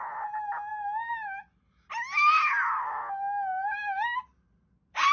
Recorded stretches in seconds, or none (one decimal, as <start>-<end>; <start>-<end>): 0.0-5.1

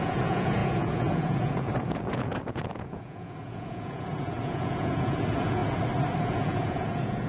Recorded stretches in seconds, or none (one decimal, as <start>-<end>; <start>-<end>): 5.6-6.2

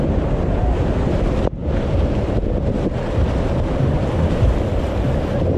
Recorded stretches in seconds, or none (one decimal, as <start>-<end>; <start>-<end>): 0.0-5.6

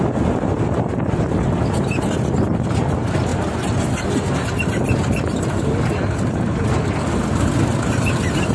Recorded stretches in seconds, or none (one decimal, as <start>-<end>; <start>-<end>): 0.0-8.5

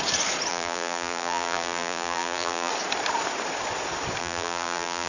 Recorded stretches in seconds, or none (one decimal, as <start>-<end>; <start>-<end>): 0.0-0.5; 2.7-4.2

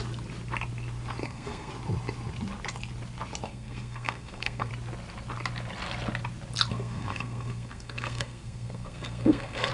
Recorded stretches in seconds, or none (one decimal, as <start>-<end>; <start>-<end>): 0.0-1.2; 1.7-3.5; 4.7-6.7